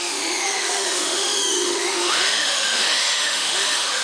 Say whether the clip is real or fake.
fake